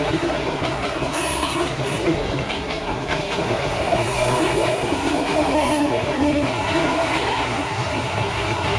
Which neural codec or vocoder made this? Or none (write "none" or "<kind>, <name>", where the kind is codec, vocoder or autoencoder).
codec, SNAC